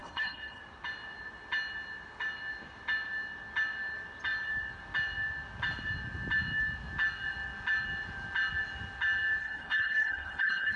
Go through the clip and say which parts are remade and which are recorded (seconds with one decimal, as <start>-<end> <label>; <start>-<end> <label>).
0.0-0.6 remade; 0.6-9.4 recorded; 9.4-10.8 remade